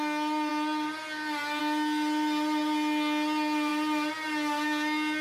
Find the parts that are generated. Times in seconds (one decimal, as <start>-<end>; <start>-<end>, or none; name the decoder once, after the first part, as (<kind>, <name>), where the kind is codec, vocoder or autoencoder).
none